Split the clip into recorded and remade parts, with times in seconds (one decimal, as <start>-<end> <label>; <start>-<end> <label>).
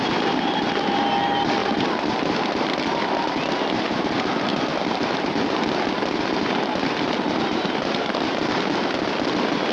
0.0-1.6 recorded; 1.6-3.9 remade; 3.9-4.5 recorded; 4.5-7.8 remade; 7.8-9.7 recorded